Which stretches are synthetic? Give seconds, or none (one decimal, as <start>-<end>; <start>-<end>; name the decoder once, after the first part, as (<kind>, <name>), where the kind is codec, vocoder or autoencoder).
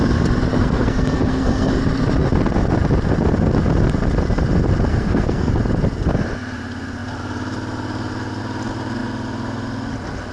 0.5-1.7 (codec, SNAC); 4.9-5.5